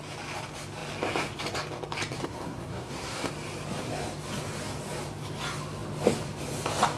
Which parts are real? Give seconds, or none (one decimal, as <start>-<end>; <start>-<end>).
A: 0.0-2.2; 3.3-7.0